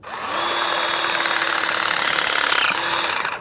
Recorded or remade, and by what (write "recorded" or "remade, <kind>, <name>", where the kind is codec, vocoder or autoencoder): recorded